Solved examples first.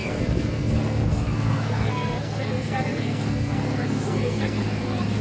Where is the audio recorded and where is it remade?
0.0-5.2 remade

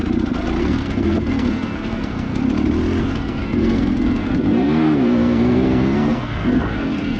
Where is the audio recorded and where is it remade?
0.0-0.6 recorded; 0.6-2.4 remade; 2.4-3.0 recorded; 3.0-7.2 remade

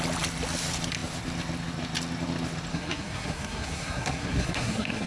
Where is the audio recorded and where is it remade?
0.0-2.7 recorded; 2.7-5.1 remade

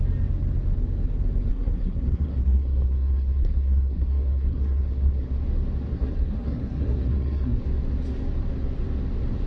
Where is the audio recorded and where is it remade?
0.0-1.5 recorded; 1.5-5.3 remade; 5.3-5.9 recorded; 5.9-7.6 remade; 7.6-9.5 recorded

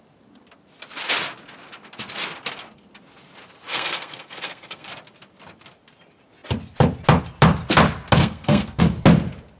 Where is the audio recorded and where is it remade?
0.0-3.7 recorded; 3.7-4.9 remade; 4.9-8.2 recorded; 8.2-8.8 remade; 8.8-9.6 recorded

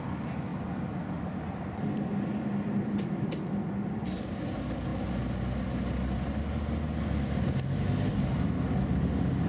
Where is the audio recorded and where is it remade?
0.0-9.5 recorded

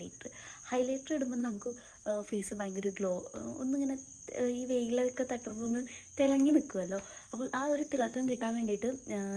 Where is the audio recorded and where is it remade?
0.0-1.4 recorded; 1.4-2.9 remade; 2.9-5.5 recorded; 5.5-6.5 remade; 6.5-7.2 recorded; 7.2-8.8 remade; 8.8-9.4 recorded

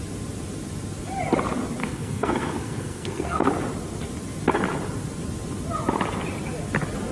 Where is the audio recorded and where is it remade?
0.0-1.8 recorded; 1.8-3.5 remade; 3.5-7.1 recorded